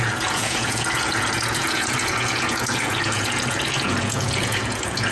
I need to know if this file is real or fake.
fake